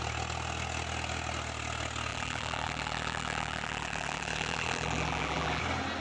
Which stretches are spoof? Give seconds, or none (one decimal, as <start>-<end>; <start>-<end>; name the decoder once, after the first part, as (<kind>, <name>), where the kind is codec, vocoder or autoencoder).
2.1-5.6 (vocoder, BigVGAN v2)